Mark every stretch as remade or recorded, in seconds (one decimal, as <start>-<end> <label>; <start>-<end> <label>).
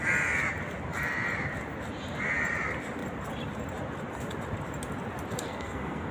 0.0-5.5 recorded; 5.5-6.1 remade